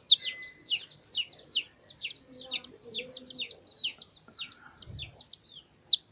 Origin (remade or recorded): recorded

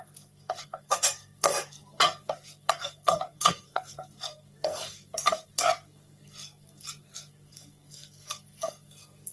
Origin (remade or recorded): remade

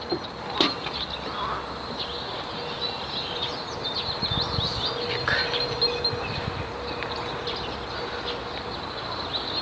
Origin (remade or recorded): recorded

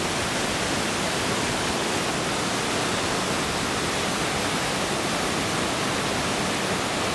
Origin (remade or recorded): recorded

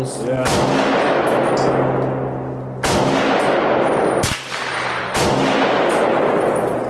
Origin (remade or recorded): recorded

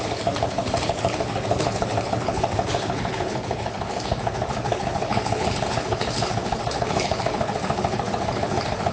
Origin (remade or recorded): remade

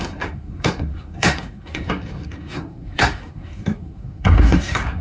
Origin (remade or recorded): remade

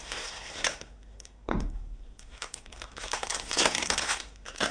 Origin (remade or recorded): remade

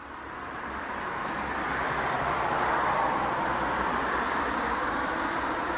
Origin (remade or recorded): remade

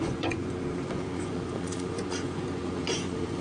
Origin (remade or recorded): remade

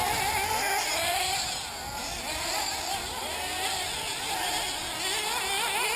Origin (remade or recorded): recorded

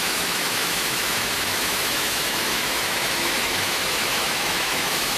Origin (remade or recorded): remade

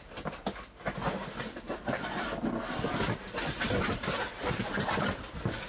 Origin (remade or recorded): recorded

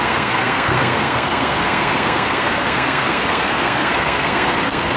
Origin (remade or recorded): remade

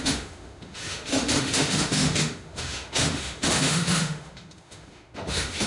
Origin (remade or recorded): remade